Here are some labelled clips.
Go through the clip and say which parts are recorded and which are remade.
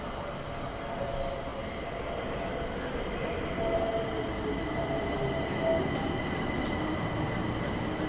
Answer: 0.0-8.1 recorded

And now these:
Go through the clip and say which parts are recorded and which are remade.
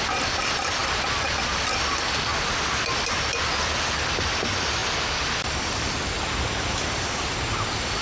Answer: 0.0-8.0 recorded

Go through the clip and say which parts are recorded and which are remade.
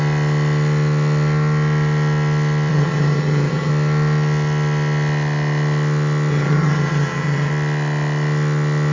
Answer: 0.0-2.7 recorded; 2.7-3.7 remade; 3.7-6.3 recorded; 6.3-7.5 remade; 7.5-8.9 recorded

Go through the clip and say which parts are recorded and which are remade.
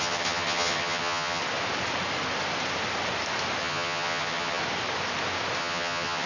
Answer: 0.0-1.4 remade; 1.4-3.6 recorded; 3.6-4.6 remade; 4.6-5.6 recorded; 5.6-6.3 remade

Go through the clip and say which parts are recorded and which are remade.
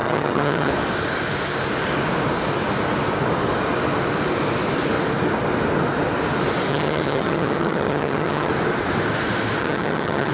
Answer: 0.0-0.7 remade; 0.7-6.7 recorded; 6.7-8.5 remade; 8.5-9.6 recorded; 9.6-10.3 remade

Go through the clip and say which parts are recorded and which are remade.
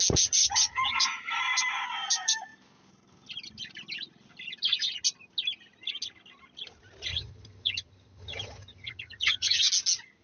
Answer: 0.0-0.4 recorded; 0.4-1.0 remade; 1.0-7.1 recorded; 7.1-9.6 remade; 9.6-10.2 recorded